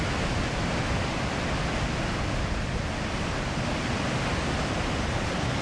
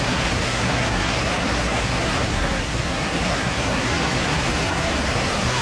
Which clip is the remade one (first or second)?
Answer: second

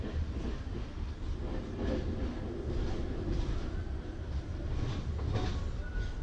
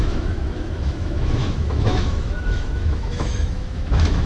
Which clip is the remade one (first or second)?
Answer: second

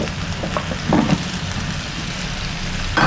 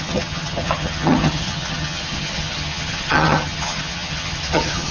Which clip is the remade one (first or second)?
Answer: second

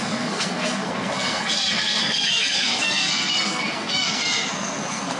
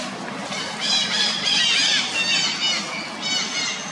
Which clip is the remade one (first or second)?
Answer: first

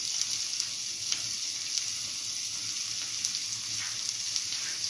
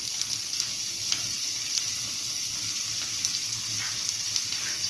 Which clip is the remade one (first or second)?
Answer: second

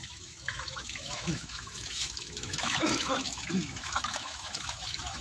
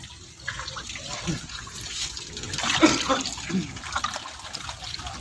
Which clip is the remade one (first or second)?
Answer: first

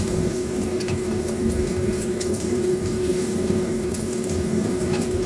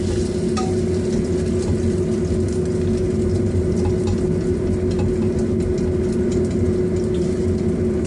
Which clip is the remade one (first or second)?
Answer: first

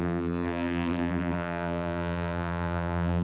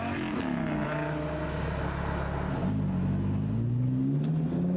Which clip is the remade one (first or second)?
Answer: first